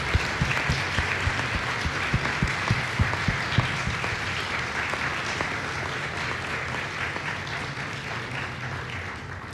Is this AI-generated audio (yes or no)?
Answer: no